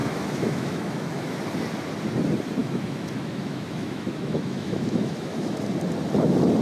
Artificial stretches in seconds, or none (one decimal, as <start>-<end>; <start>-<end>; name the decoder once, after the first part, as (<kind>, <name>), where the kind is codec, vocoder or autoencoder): 0.0-1.4 (autoencoder, DAC-VAE); 2.6-5.7